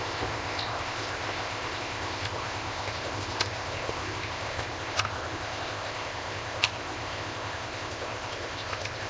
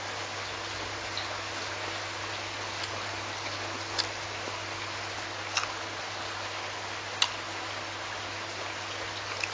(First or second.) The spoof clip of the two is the first